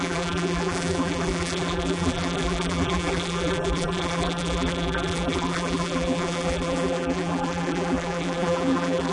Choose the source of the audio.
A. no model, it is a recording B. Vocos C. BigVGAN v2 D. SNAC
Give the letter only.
C